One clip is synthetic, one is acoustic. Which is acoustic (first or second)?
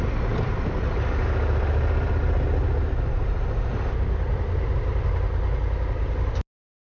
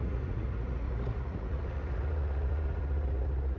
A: first